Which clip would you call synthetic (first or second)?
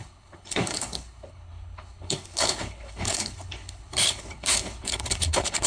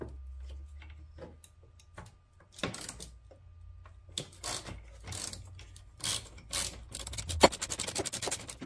first